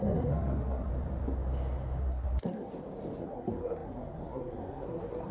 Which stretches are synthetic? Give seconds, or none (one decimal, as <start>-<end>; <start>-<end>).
0.0-0.9; 2.0-2.7; 3.2-5.3